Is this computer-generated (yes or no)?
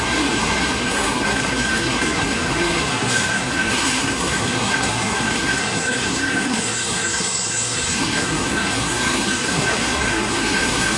yes